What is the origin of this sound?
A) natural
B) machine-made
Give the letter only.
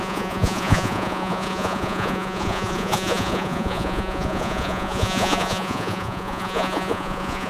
B